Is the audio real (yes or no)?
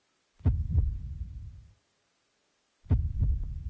yes